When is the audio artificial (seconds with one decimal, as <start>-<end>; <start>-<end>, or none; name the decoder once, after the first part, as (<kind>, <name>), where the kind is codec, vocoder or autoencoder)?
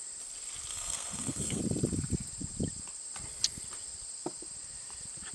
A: 0.7-1.6 (codec, SNAC)